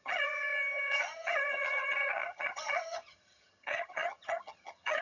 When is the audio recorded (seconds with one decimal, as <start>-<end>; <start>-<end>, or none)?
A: none